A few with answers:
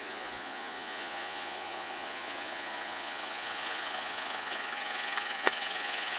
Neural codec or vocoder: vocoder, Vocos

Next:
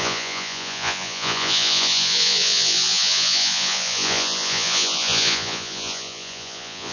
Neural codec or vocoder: vocoder, Vocos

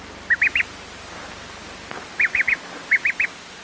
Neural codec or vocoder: none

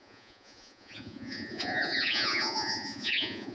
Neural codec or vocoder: vocoder, Vocos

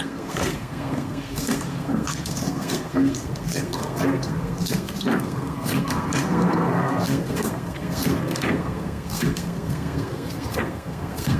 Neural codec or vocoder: codec, SNAC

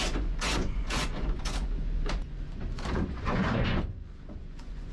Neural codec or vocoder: vocoder, Vocos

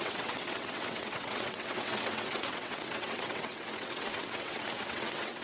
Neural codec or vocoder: vocoder, WaveNeXt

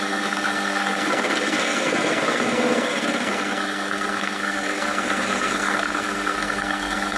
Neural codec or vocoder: codec, SNAC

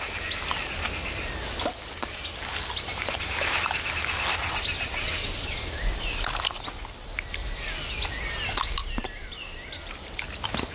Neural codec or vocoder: none